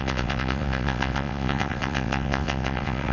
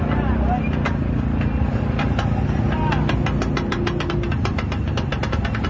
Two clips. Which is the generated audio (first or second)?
first